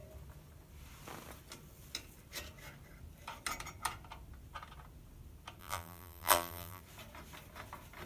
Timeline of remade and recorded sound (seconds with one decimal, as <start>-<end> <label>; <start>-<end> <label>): 0.0-5.6 recorded; 5.6-6.8 remade; 6.8-8.1 recorded